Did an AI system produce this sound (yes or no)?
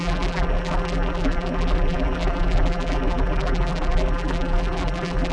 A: yes